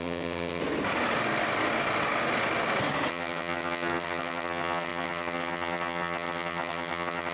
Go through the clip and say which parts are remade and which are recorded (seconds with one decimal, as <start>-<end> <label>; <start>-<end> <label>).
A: 0.0-0.6 remade; 0.6-3.1 recorded; 3.1-7.3 remade